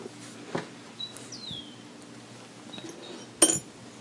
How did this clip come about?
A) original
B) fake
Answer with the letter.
A